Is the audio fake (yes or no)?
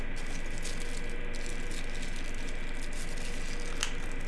no